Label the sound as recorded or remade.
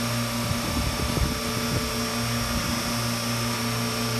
recorded